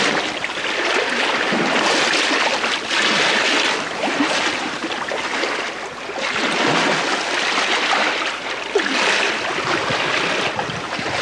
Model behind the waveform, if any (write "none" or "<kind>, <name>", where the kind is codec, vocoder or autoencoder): none